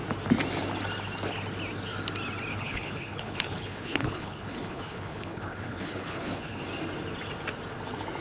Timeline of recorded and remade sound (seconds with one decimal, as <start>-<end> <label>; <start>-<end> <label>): 0.0-2.5 recorded; 2.5-6.6 remade; 6.6-8.2 recorded